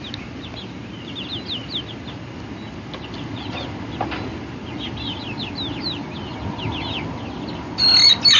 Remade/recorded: recorded